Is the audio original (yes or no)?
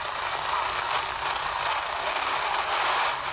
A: yes